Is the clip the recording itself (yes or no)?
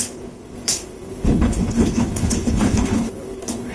no